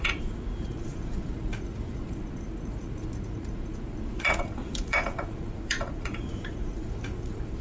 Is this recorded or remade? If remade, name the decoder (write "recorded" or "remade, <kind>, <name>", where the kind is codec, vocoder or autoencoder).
remade, vocoder, Vocos